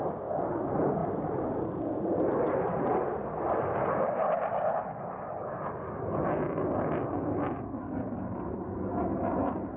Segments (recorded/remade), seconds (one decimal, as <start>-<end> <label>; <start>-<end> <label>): 0.0-1.0 recorded; 1.0-1.8 remade; 1.8-9.8 recorded